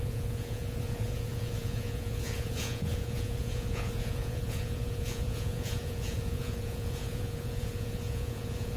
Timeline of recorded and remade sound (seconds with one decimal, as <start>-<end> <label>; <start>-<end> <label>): 0.0-8.8 remade